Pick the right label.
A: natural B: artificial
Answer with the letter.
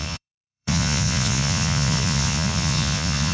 B